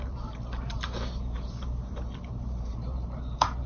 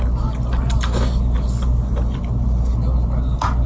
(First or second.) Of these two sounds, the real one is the second